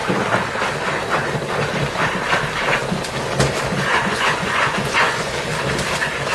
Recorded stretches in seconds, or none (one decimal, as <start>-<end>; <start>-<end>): 0.0-3.9; 5.3-6.3

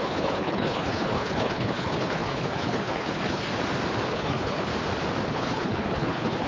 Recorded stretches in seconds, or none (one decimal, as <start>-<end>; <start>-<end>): 3.5-4.1; 4.7-5.3

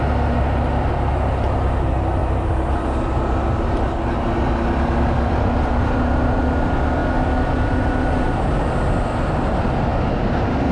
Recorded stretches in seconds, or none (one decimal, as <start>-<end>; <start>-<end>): 0.0-10.7

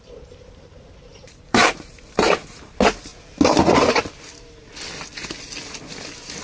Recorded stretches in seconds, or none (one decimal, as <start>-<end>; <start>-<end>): 0.0-1.1; 2.7-6.4